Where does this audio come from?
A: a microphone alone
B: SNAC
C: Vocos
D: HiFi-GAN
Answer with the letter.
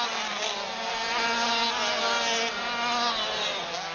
A